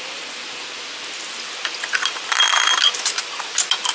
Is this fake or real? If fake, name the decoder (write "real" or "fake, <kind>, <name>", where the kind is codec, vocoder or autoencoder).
real